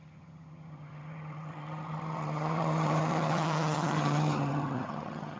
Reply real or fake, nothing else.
fake